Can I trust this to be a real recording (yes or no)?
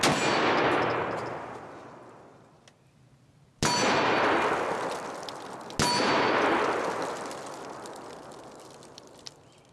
yes